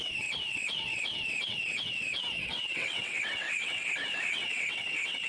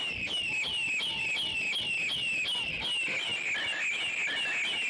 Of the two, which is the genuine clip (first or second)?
second